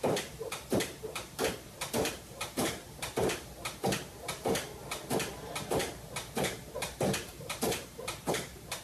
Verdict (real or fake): fake